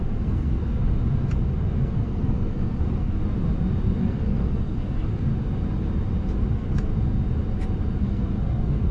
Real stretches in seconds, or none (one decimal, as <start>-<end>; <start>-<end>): 0.9-1.6; 3.2-4.0; 5.3-6.5; 6.9-8.0